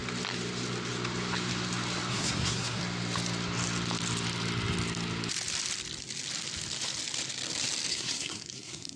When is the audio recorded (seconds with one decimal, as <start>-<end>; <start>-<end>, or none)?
0.0-2.1; 2.8-7.9